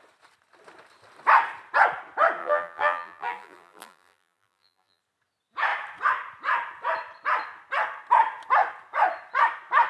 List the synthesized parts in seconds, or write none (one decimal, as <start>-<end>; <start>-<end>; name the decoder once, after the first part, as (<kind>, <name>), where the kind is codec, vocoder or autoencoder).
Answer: 2.4-5.0 (vocoder, BigVGAN v2)